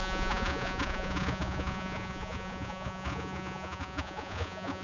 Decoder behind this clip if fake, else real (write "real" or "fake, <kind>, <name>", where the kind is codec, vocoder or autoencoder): fake, vocoder, Vocos